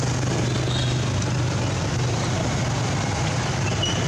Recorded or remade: recorded